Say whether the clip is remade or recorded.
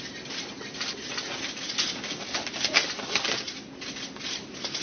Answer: recorded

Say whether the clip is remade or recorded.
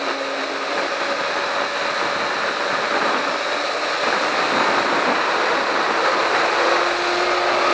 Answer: recorded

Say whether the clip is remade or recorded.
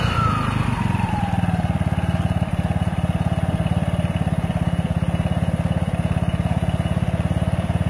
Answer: recorded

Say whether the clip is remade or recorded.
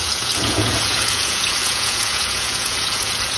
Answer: remade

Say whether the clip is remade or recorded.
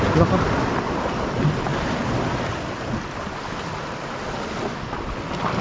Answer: recorded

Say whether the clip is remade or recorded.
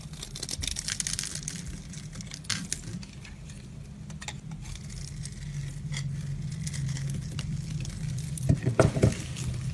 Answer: recorded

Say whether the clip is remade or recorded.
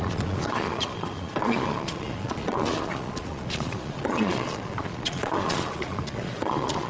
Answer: remade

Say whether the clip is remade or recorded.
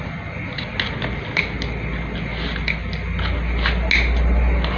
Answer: recorded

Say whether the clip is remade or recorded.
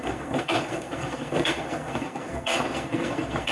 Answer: remade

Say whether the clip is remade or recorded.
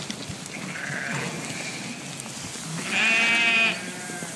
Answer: recorded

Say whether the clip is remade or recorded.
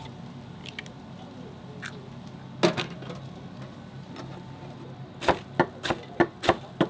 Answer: recorded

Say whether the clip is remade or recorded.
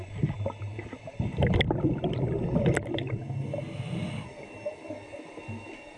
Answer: recorded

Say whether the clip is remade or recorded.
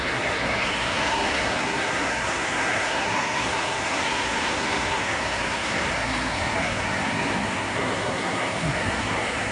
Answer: remade